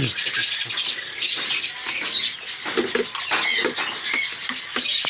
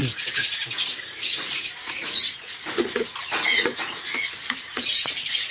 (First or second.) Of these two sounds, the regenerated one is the second